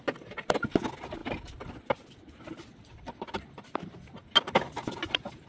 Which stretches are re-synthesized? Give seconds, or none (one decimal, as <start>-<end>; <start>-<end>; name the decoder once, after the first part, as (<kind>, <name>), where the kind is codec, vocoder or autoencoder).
none